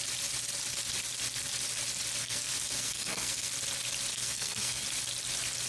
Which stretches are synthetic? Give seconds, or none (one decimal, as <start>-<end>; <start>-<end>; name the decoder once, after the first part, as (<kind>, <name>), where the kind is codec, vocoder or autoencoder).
2.2-3.5 (codec, SNAC); 4.1-4.8